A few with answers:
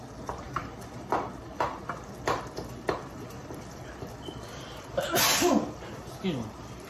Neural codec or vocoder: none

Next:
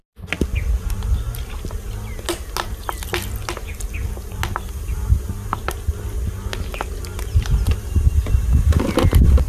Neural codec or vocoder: none